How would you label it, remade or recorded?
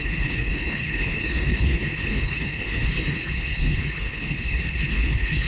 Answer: remade